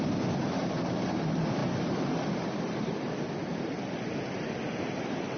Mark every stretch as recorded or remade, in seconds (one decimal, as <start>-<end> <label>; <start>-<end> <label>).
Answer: 0.0-5.4 recorded